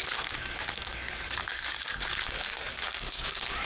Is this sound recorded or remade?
remade